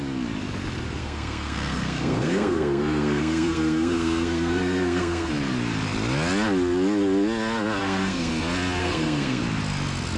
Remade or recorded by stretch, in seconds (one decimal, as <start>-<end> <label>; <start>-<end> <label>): 0.0-1.0 recorded; 1.0-5.3 remade; 5.3-7.8 recorded; 7.8-8.3 remade; 8.3-8.8 recorded; 8.8-9.4 remade; 9.4-10.2 recorded